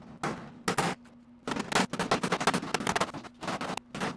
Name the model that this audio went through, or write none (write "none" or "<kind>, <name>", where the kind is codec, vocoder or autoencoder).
none